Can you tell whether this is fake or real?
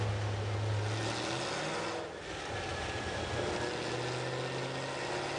real